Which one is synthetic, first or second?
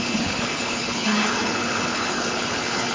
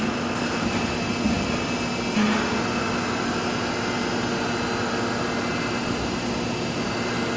first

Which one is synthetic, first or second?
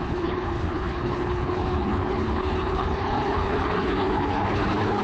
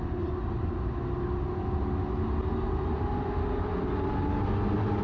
first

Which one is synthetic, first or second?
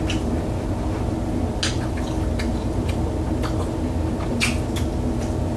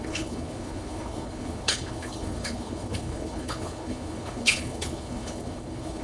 second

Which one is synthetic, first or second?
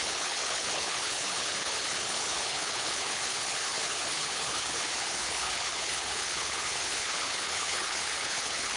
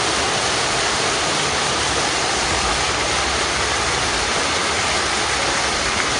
first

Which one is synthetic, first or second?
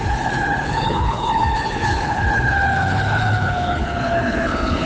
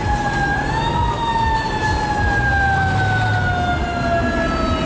first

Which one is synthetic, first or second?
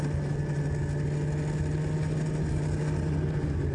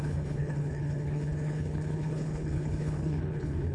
second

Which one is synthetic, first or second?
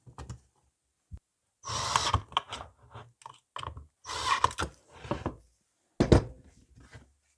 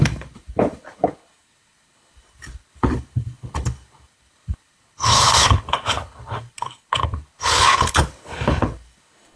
second